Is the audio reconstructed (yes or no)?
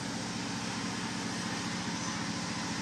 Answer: no